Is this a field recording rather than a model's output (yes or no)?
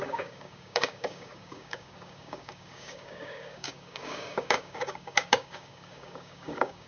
no